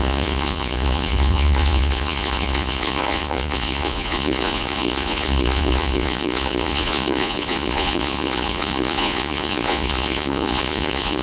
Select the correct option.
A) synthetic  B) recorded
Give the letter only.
A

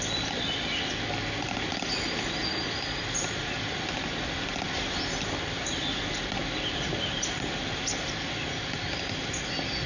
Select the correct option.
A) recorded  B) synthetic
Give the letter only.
A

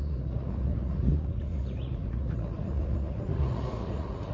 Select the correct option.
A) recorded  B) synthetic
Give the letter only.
B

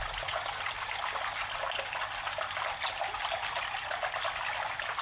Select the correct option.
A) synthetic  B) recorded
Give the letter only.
B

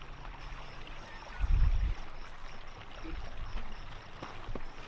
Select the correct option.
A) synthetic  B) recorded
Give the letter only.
B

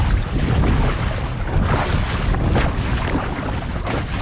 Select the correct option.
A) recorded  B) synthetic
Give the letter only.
A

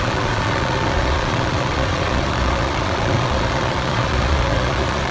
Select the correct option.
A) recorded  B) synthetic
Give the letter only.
B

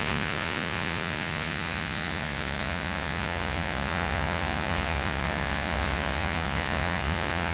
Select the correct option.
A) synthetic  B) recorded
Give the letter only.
A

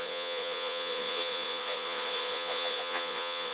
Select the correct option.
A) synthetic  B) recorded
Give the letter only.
A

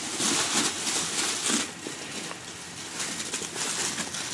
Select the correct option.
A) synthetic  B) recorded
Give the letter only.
B